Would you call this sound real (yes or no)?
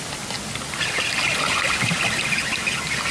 yes